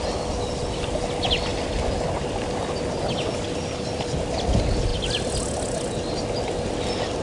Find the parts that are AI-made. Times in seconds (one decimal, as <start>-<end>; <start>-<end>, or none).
none